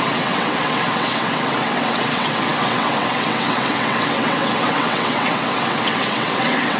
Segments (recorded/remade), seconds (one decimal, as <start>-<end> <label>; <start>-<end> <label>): 0.0-6.8 remade